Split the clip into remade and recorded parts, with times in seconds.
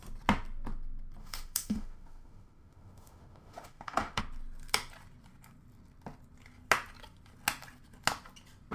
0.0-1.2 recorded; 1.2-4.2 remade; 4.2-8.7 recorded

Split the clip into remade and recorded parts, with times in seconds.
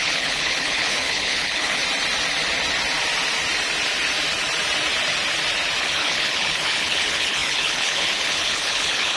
0.0-1.8 remade; 1.8-5.8 recorded; 5.8-9.2 remade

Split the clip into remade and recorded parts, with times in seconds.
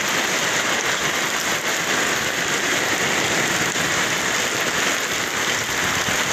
0.0-6.3 recorded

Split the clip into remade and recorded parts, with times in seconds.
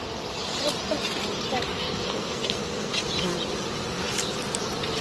0.0-1.7 recorded; 1.7-2.9 remade; 2.9-5.0 recorded